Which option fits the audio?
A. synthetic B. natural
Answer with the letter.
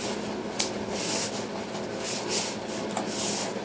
B